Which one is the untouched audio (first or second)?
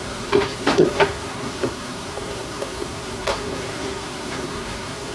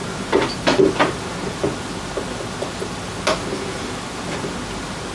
second